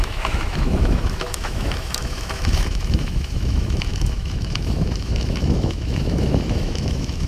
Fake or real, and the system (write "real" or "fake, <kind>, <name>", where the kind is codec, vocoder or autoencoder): fake, autoencoder, DAC-VAE